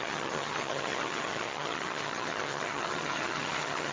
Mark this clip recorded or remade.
remade